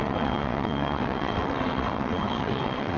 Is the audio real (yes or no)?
no